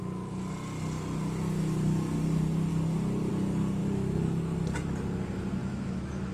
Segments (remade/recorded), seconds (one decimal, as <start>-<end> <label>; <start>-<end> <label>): 0.0-3.8 recorded; 3.8-4.4 remade; 4.4-5.6 recorded; 5.6-6.3 remade

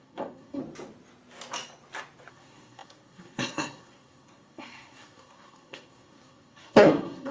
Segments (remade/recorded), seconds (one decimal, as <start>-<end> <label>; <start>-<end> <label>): 0.0-0.6 remade; 0.6-2.3 recorded; 2.3-7.3 remade